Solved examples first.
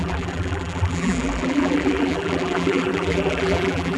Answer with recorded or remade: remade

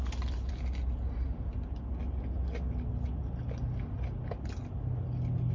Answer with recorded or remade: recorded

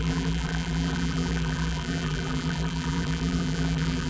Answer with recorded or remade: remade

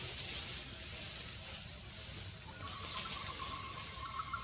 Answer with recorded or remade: recorded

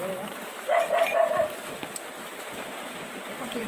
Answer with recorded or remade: remade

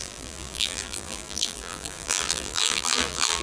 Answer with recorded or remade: remade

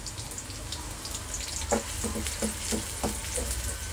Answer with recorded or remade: recorded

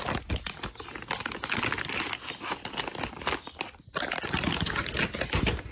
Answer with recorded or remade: recorded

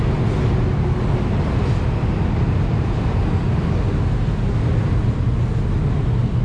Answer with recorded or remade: recorded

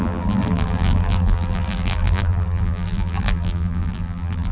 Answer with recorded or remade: remade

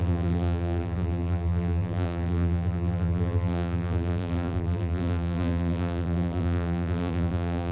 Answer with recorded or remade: remade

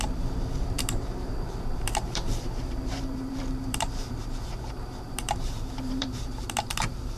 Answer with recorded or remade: remade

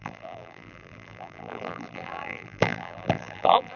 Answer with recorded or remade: remade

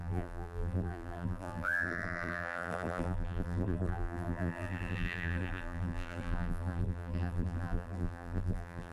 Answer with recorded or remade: remade